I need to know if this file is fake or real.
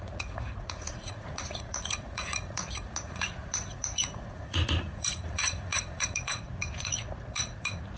fake